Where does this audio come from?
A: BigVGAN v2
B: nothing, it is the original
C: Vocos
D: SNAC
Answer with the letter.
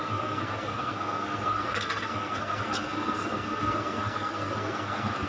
D